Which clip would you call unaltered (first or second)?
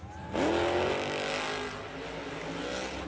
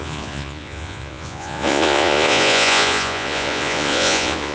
first